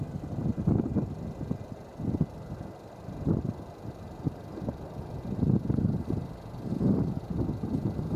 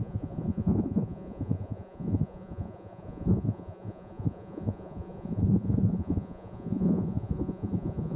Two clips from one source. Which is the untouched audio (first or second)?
first